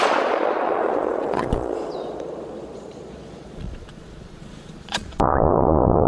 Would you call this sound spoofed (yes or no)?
yes